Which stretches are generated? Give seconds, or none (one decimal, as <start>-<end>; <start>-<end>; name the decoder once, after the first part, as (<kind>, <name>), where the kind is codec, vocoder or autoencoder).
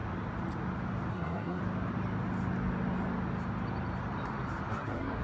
1.1-1.6 (codec, SNAC); 4.7-5.2